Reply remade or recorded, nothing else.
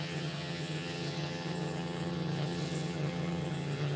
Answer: remade